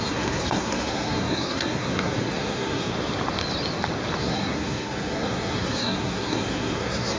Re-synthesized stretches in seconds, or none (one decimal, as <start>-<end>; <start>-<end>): 0.0-2.9; 4.2-7.2